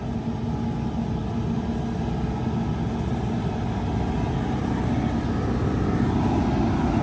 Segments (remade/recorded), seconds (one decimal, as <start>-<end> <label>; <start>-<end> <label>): 0.0-7.0 recorded